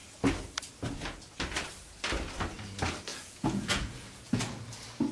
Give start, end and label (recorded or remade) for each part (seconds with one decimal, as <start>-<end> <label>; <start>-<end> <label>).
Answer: 0.0-3.1 recorded; 3.1-4.6 remade; 4.6-5.1 recorded